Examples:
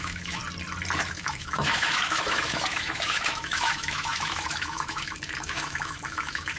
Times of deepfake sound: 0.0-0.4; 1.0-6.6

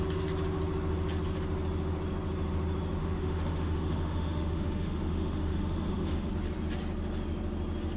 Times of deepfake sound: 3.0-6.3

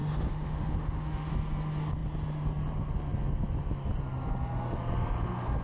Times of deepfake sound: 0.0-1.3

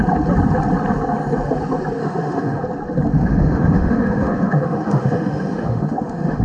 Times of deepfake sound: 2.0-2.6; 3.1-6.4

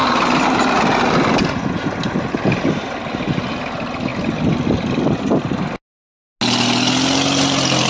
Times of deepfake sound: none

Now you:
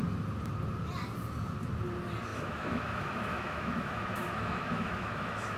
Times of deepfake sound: 2.3-5.6

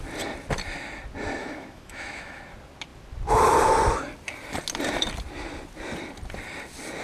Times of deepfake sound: 1.4-2.4